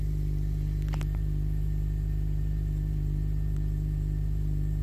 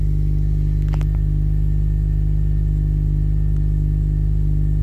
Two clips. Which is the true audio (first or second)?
second